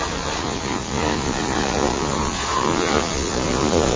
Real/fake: fake